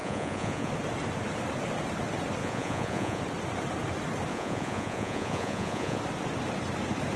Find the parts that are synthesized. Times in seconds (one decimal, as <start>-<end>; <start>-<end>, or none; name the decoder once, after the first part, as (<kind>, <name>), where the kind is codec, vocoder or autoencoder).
0.0-0.7 (vocoder, Vocos); 2.4-3.2; 4.3-6.0